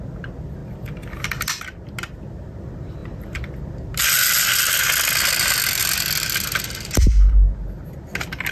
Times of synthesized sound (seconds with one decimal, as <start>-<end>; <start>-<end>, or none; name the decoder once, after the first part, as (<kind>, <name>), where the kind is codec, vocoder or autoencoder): none